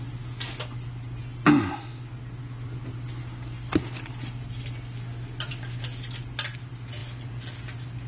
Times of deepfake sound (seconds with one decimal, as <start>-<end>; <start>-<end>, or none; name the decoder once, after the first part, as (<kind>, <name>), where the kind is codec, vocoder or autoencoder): none